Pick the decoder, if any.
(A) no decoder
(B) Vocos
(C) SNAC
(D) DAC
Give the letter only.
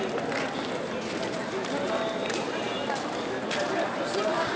A